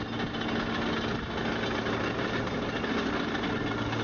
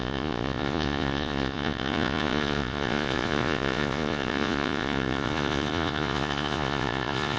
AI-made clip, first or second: second